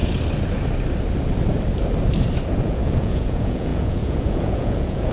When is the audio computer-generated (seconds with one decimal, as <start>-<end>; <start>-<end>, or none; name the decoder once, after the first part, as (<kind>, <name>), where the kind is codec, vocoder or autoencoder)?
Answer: 2.5-5.1 (vocoder, Vocos)